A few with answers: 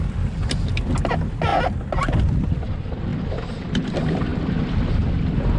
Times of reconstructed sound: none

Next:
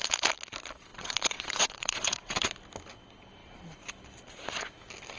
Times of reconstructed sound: 0.9-2.5 (vocoder, WaveNeXt)

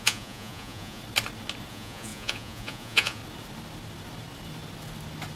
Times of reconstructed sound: 0.0-1.0 (vocoder, Vocos); 1.7-3.2

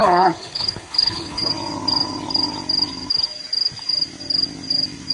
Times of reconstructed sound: 0.0-1.5 (codec, HILCodec)

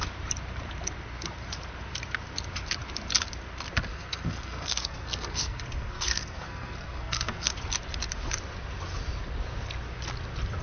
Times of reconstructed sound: 3.9-7.5 (codec, SNAC)